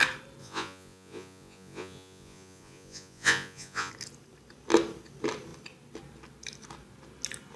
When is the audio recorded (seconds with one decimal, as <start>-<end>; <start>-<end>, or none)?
0.0-0.4; 3.9-7.6